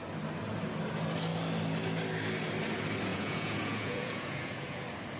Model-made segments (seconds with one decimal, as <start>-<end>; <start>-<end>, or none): 3.1-4.8